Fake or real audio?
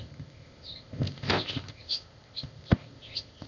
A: fake